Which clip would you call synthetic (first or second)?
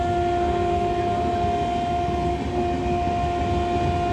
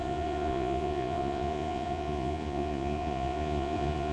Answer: second